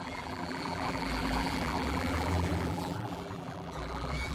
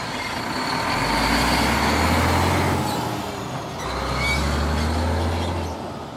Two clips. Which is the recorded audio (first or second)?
second